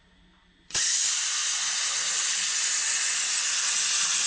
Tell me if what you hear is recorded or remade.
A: recorded